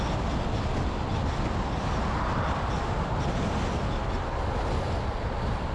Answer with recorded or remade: recorded